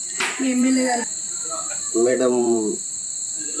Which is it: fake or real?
fake